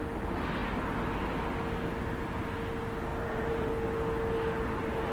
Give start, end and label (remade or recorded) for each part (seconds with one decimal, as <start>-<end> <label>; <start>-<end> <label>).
0.0-3.1 recorded; 3.1-3.7 remade; 3.7-5.1 recorded